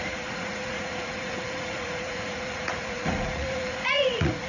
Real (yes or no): no